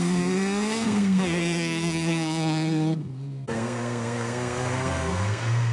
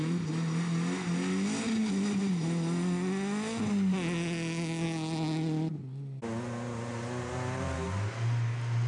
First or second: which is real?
second